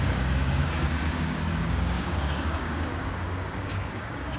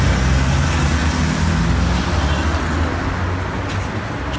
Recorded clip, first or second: second